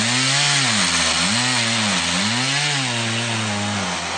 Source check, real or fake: real